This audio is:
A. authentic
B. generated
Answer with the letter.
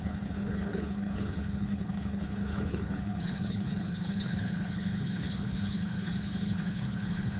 B